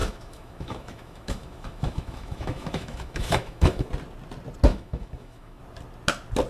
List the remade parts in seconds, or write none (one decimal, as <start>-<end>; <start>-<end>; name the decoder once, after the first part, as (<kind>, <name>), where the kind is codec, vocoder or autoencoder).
0.0-3.9 (autoencoder, DAC-VAE); 4.7-5.6